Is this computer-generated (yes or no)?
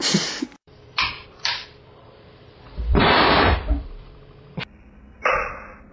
yes